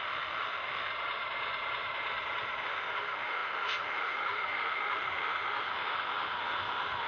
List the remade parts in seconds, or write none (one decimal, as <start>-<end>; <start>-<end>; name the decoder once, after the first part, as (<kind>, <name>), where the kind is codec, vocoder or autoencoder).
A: 0.0-0.9 (autoencoder, DAC-VAE); 2.6-7.1